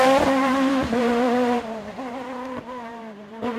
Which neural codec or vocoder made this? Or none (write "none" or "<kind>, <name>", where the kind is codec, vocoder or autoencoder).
vocoder, BigVGAN v2